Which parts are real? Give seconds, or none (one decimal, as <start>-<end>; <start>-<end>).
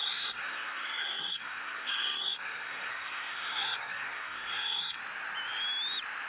5.0-6.3